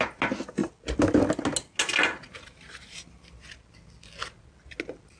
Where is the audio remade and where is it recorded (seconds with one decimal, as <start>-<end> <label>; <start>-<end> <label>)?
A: 0.0-5.2 recorded